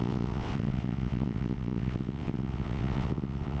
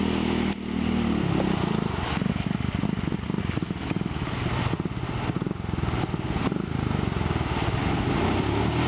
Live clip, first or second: second